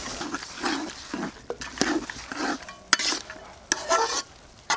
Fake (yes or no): no